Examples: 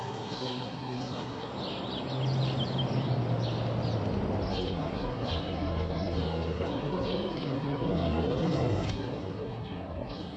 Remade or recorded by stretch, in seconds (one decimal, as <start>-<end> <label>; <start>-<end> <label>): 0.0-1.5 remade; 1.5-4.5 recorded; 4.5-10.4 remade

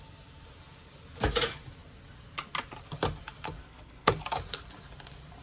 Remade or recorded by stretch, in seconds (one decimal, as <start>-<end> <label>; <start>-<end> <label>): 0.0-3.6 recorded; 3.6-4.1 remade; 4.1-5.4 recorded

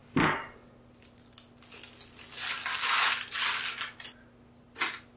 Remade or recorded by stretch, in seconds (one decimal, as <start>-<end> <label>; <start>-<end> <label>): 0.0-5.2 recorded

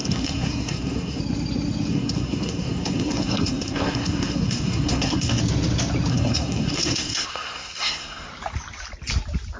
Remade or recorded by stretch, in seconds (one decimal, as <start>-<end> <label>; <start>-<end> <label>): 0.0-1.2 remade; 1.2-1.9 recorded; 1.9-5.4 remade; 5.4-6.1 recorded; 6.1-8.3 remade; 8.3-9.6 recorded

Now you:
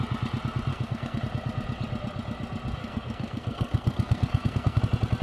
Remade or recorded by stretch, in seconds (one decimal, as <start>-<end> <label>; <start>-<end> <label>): 0.0-0.7 recorded; 0.7-1.2 remade; 1.2-2.8 recorded; 2.8-4.8 remade; 4.8-5.2 recorded